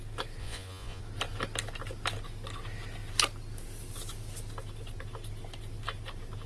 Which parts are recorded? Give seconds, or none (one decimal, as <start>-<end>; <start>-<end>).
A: 0.0-0.4; 1.0-6.5

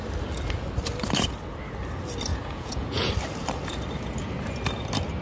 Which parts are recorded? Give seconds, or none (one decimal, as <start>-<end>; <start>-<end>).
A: 0.0-2.3; 3.1-5.2